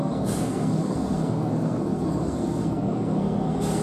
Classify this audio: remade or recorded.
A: remade